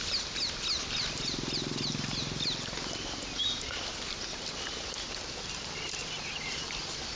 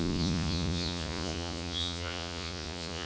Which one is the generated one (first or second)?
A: second